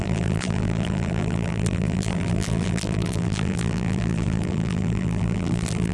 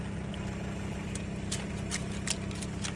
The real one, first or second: second